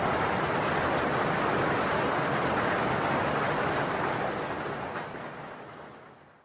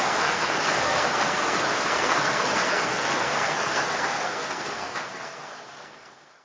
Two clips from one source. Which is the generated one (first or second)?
second